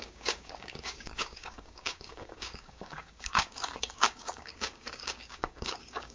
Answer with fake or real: fake